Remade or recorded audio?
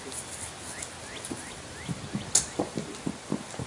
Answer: recorded